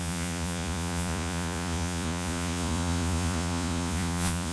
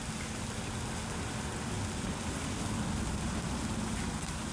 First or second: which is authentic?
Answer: second